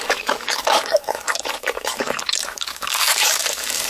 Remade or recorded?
remade